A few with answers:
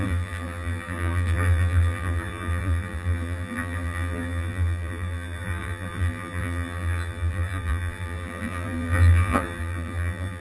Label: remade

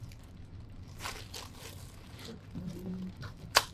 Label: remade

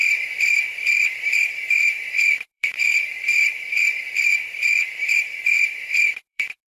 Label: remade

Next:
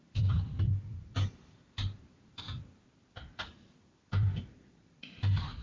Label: remade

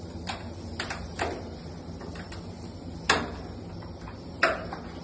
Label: recorded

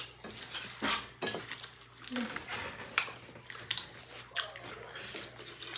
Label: recorded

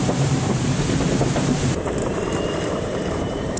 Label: remade